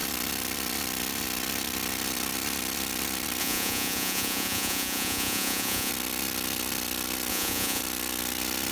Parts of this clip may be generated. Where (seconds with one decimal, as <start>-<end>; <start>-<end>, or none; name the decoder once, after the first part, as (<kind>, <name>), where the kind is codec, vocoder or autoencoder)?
3.4-5.9 (vocoder, Vocos); 7.3-7.8